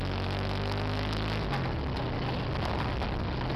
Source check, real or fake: real